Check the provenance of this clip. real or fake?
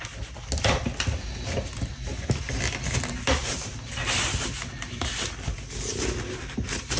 real